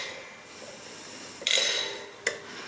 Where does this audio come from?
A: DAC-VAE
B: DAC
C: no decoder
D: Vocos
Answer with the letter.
C